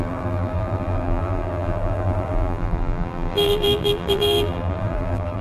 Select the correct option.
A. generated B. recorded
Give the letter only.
A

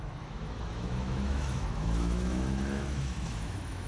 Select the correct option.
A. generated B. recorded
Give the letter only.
A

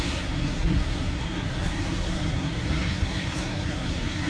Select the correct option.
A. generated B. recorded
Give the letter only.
A